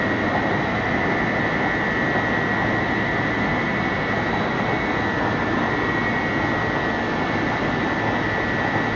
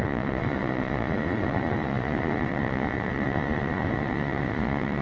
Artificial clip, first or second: second